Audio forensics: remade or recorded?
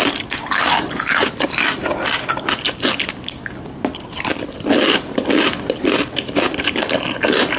recorded